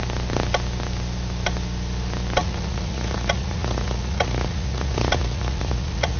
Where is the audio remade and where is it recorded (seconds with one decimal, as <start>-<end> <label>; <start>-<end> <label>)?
0.0-2.4 recorded; 2.4-6.2 remade